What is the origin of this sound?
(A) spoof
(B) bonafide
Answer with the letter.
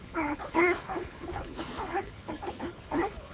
A